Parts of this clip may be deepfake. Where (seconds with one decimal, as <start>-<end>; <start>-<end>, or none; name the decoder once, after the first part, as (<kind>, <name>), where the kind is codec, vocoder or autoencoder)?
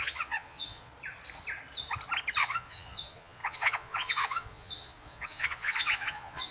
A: 0.0-0.9 (vocoder, Vocos); 2.4-6.5